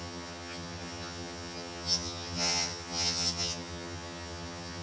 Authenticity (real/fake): fake